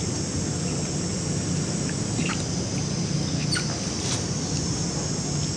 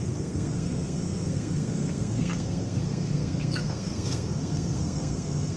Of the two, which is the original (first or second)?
first